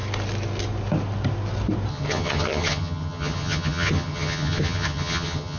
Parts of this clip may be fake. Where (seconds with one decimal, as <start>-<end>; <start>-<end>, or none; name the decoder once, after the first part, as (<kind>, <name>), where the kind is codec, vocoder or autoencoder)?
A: 1.9-5.6 (vocoder, HiFi-GAN)